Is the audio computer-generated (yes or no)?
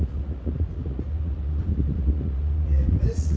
yes